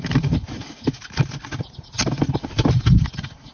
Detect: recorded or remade recorded